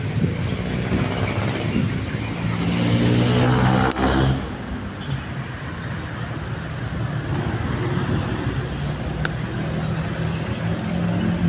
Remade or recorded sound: recorded